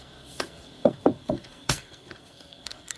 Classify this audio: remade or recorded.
remade